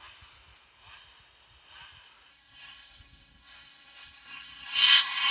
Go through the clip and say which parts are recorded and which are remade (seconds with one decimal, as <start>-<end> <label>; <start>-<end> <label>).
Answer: 0.0-2.3 recorded; 2.3-5.3 remade